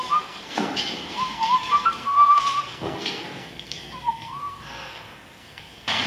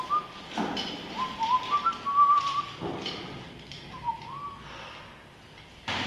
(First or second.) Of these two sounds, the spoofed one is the first